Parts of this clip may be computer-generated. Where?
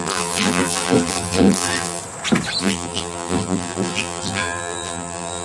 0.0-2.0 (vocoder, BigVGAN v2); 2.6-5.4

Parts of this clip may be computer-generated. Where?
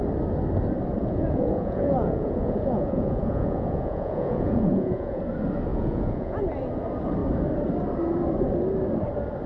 1.0-5.2 (vocoder, Vocos); 5.7-6.4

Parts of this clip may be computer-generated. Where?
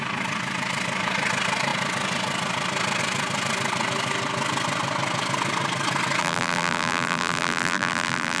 6.2-8.4 (vocoder, BigVGAN v2)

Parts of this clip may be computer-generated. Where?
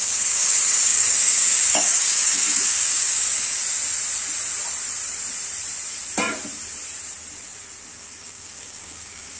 0.0-3.6 (codec, DAC); 7.9-9.4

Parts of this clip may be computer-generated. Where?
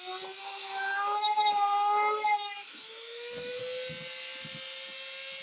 0.4-3.6 (autoencoder, DAC-VAE)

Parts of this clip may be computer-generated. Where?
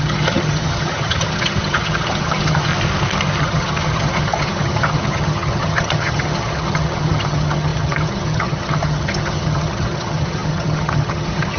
0.0-2.7 (vocoder, HiFi-GAN); 3.4-11.6